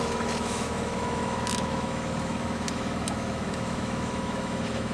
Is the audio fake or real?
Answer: fake